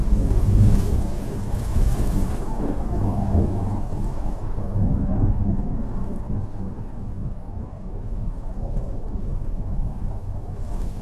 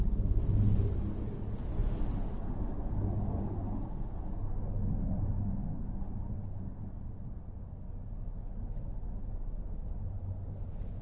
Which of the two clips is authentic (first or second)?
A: second